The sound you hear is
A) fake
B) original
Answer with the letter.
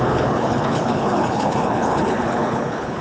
A